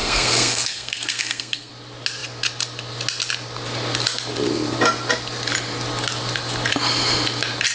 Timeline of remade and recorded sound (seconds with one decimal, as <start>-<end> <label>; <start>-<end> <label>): 0.0-1.7 remade; 1.7-7.7 recorded